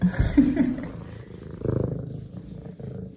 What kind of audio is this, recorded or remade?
recorded